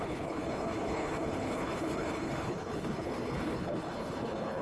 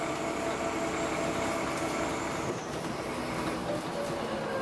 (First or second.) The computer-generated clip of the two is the first